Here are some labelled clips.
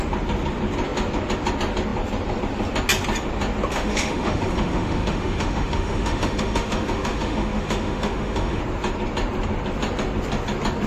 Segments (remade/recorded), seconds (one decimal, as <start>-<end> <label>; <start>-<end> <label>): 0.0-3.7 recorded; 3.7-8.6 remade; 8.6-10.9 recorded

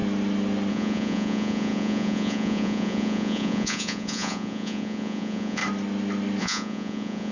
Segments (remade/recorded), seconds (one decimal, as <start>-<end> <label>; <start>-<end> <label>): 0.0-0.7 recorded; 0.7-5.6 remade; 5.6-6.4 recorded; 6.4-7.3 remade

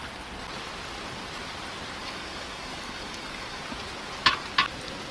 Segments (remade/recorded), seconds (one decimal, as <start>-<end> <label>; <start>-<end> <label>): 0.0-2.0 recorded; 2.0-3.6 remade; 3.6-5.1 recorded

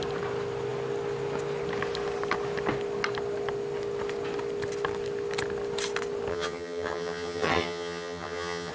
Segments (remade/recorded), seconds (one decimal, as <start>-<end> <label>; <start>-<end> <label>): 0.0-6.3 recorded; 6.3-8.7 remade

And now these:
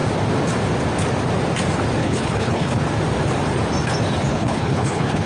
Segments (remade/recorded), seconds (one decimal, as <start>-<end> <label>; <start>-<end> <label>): 0.0-2.0 recorded; 2.0-2.8 remade; 2.8-4.3 recorded; 4.3-5.3 remade